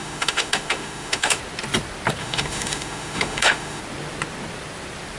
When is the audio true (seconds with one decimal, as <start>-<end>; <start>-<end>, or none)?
1.4-2.2; 3.8-5.2

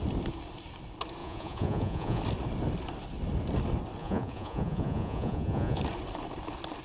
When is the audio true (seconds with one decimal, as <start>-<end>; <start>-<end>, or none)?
0.0-1.2; 2.2-4.0; 5.8-6.8

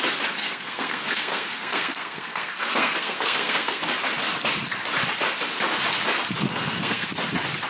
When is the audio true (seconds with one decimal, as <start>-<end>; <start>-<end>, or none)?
0.0-0.4; 3.8-6.4; 7.1-7.7

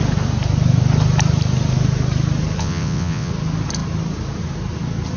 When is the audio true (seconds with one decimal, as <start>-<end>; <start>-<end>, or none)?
0.0-2.6; 3.3-5.2